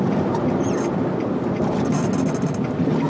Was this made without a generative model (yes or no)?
yes